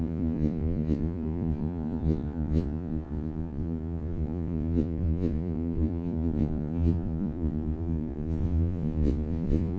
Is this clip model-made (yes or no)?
yes